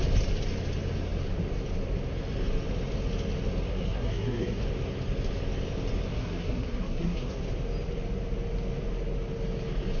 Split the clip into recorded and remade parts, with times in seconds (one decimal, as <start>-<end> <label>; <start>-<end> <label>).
0.0-3.7 recorded; 3.7-4.6 remade; 4.6-6.1 recorded; 6.1-7.4 remade; 7.4-10.0 recorded